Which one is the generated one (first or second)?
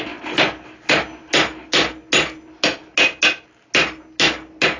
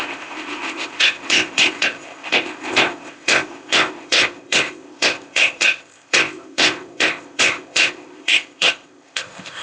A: second